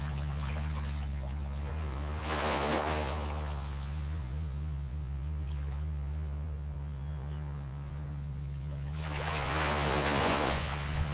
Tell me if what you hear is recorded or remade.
remade